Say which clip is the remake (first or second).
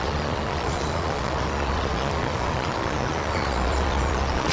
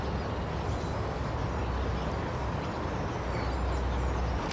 first